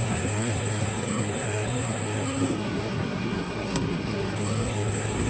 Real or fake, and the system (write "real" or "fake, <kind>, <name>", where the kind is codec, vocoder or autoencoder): fake, codec, SNAC